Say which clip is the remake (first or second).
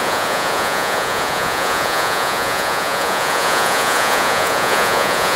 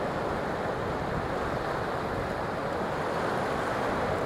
first